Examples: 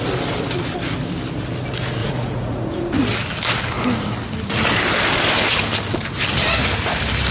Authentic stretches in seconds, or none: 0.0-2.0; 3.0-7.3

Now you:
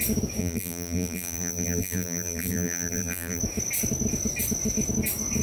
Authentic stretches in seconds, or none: 0.0-0.4; 3.4-5.4

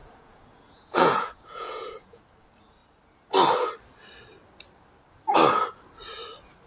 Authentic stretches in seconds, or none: 2.2-6.7

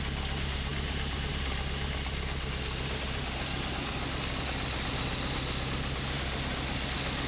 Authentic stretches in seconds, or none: 0.0-7.3

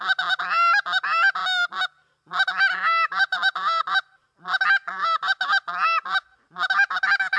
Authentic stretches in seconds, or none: 0.0-7.4

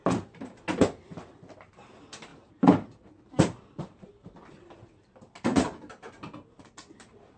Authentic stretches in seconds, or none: 0.0-2.3; 4.1-5.5; 6.1-7.4

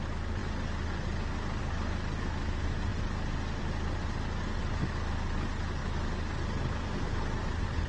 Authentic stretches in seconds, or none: 0.0-7.9

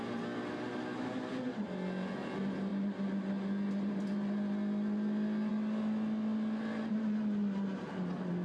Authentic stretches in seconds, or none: 0.0-8.4